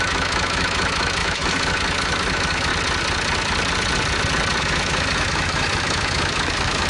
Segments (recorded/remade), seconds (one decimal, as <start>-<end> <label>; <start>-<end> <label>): 0.0-2.7 remade; 2.7-4.6 recorded; 4.6-6.9 remade